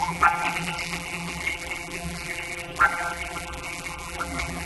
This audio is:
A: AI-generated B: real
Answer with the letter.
A